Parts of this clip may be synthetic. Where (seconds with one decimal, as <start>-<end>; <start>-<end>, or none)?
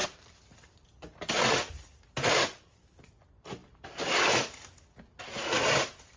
none